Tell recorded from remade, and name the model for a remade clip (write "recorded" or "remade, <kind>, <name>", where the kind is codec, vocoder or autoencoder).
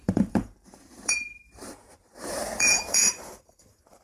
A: remade, vocoder, BigVGAN v2